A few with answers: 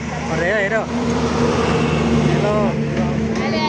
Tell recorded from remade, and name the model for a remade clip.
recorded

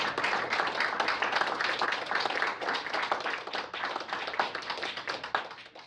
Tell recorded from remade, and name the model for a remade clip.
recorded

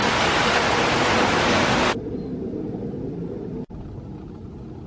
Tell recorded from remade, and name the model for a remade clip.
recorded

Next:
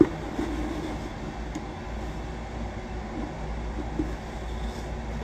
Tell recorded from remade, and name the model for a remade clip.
recorded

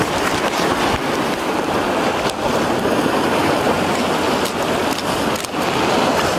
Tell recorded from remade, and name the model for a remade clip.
recorded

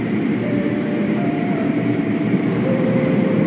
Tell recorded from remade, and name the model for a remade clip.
remade, vocoder, BigVGAN v2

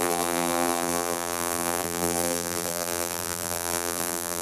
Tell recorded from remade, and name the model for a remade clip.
remade, vocoder, BigVGAN v2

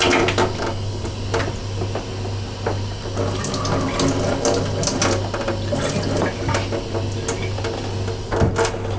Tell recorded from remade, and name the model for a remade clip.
recorded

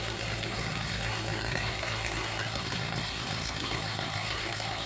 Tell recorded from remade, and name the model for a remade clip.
remade, codec, SNAC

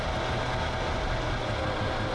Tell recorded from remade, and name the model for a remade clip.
recorded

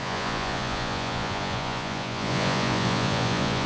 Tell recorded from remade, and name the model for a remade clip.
remade, vocoder, Vocos